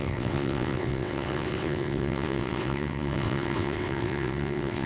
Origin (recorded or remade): remade